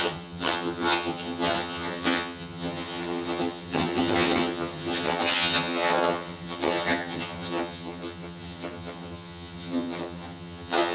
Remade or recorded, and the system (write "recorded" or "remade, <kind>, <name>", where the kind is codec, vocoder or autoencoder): remade, vocoder, HiFi-GAN